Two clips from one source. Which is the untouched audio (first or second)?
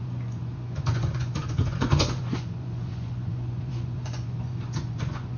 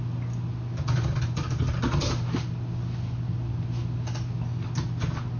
second